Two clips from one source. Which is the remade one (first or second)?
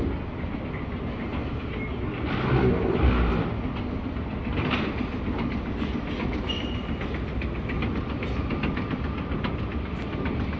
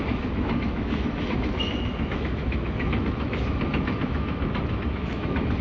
second